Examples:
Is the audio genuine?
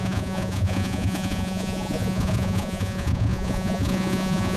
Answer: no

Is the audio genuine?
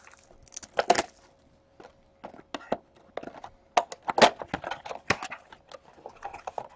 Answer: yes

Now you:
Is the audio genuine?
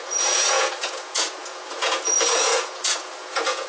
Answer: no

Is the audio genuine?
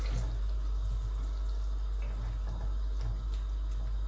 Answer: yes